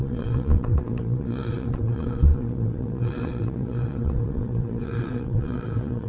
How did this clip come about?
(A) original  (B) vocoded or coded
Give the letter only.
B